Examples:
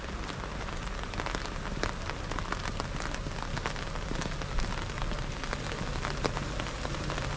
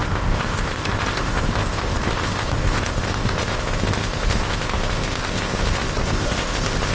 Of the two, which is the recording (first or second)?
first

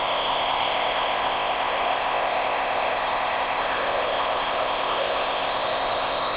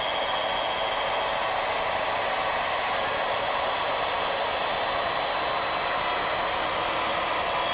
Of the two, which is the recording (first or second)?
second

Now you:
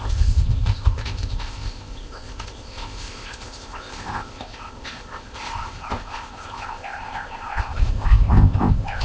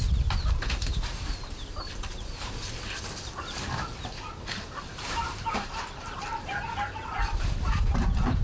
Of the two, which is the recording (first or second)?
second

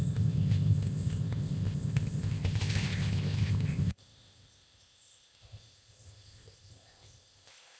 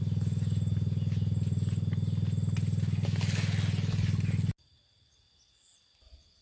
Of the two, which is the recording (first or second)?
second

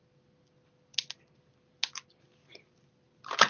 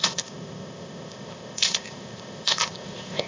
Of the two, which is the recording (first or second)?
first